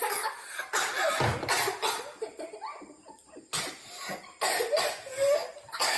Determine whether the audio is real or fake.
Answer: real